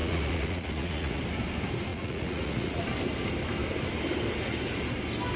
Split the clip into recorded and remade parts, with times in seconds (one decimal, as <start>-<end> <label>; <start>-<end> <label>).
0.0-1.2 remade; 1.2-1.9 recorded; 1.9-2.8 remade; 2.8-5.4 recorded